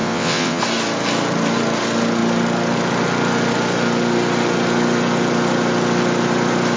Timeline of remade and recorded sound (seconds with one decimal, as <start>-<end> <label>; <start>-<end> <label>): 0.0-0.6 remade; 0.6-6.8 recorded